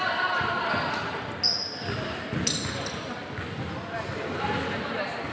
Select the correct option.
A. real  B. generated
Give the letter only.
A